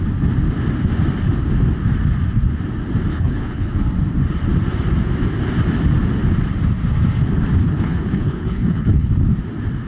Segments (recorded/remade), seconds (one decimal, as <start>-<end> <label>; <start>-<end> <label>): 0.0-3.1 recorded; 3.1-3.7 remade; 3.7-7.6 recorded; 7.6-9.1 remade; 9.1-9.9 recorded